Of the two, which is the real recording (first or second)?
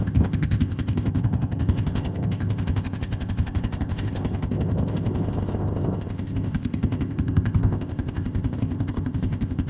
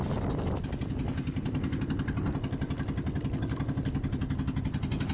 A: second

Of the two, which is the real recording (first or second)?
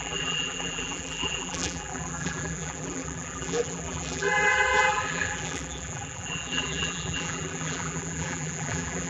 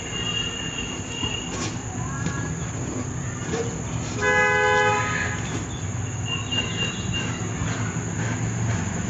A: second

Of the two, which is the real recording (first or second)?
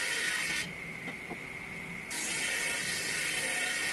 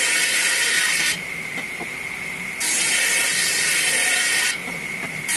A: first